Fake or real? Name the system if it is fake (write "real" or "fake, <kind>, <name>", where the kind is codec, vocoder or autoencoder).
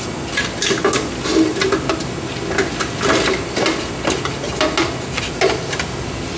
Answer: real